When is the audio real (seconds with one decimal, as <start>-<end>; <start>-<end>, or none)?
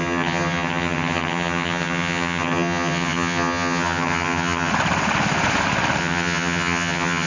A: 4.7-6.0